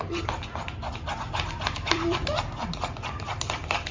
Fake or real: fake